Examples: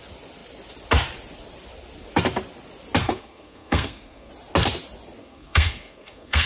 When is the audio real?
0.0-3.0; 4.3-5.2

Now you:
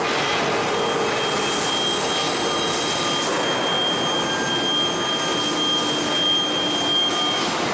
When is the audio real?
0.0-7.7

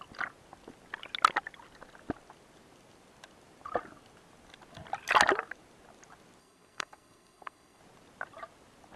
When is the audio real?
0.0-6.4; 7.8-9.0

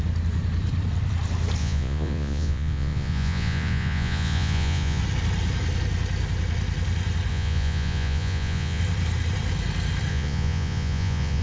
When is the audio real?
0.0-1.6; 5.0-7.3; 8.8-10.1